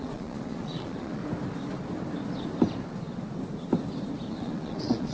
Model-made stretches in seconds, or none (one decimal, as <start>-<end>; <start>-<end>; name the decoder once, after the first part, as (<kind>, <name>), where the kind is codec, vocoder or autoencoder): 0.0-1.2 (vocoder, Vocos); 4.3-5.1